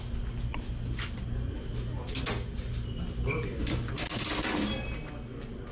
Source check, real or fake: real